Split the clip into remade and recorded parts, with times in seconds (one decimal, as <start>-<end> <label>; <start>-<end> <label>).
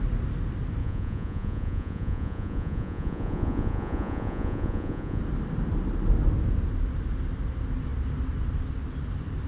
0.0-0.8 recorded; 0.8-5.2 remade; 5.2-9.5 recorded